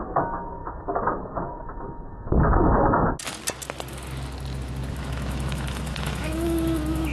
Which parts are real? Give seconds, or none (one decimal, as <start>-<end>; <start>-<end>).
0.6-4.9